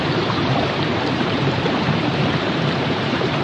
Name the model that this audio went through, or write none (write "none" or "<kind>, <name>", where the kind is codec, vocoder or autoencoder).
vocoder, BigVGAN v2